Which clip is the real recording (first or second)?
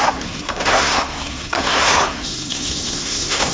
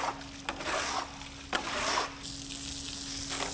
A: second